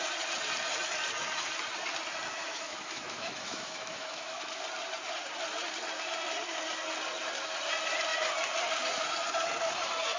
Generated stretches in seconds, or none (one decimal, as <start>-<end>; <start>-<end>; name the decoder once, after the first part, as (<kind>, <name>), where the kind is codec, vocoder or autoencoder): 2.4-4.6 (autoencoder, DAC-VAE)

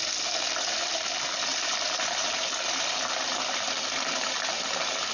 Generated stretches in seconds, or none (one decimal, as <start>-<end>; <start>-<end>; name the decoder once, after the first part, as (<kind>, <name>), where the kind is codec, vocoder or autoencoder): 1.5-4.6 (vocoder, BigVGAN v2)

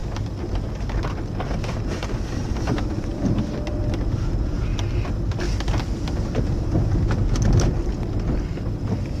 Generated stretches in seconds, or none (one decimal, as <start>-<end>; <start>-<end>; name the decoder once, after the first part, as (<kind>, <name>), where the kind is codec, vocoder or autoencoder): none

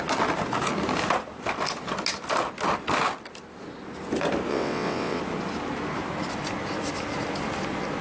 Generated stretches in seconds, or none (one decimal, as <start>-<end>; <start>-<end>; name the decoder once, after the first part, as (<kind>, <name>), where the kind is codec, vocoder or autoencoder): 4.5-5.2 (vocoder, WaveNeXt)

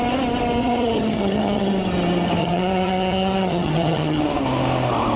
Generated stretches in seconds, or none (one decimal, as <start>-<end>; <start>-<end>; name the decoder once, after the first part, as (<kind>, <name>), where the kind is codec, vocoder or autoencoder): 0.6-1.7 (vocoder, HiFi-GAN); 2.4-4.2

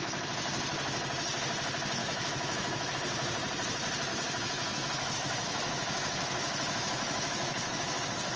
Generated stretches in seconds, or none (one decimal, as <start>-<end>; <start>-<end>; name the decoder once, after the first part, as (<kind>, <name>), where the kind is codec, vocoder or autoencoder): 2.0-2.9 (autoencoder, DAC-VAE); 4.1-8.0

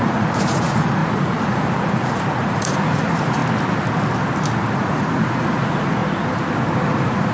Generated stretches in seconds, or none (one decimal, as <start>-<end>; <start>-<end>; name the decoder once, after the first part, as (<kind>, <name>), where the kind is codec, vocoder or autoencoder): 0.0-3.4 (vocoder, Vocos); 4.7-6.0; 6.8-7.3